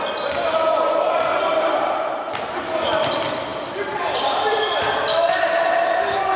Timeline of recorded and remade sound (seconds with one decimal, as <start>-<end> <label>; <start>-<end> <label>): 0.0-1.5 recorded; 1.5-2.6 remade; 2.6-3.5 recorded; 3.5-5.5 remade; 5.5-6.4 recorded